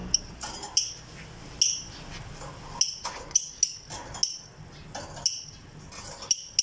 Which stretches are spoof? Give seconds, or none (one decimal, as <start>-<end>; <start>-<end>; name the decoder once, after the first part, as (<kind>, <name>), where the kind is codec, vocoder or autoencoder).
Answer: none